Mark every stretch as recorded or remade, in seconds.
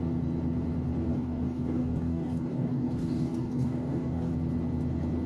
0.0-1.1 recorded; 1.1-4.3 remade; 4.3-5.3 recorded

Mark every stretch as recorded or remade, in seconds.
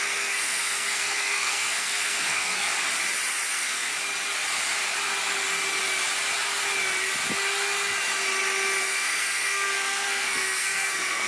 0.0-2.7 remade; 2.7-3.5 recorded; 3.5-3.9 remade; 3.9-8.8 recorded; 8.8-11.3 remade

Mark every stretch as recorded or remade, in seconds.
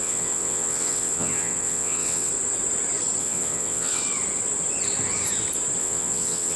0.0-2.3 remade; 2.3-3.2 recorded; 3.2-4.0 remade; 4.0-5.8 recorded; 5.8-6.6 remade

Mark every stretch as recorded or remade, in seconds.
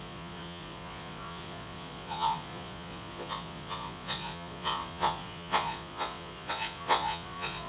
0.0-7.7 remade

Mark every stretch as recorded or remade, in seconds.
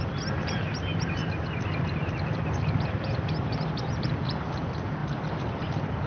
0.0-6.1 recorded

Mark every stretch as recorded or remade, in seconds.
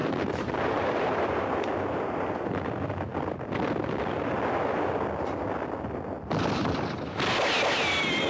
0.0-1.7 remade; 1.7-8.3 recorded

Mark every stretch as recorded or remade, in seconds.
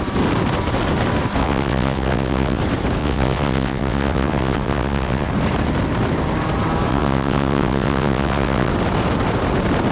0.0-1.4 recorded; 1.4-2.6 remade; 2.6-3.0 recorded; 3.0-5.3 remade; 5.3-6.9 recorded; 6.9-8.7 remade; 8.7-9.9 recorded